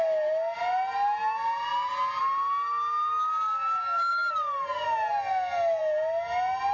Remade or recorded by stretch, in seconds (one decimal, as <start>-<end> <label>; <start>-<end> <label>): 0.0-6.7 recorded